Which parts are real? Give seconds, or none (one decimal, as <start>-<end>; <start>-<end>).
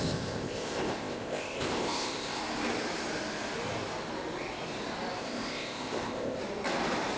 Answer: 2.4-5.2; 6.4-7.2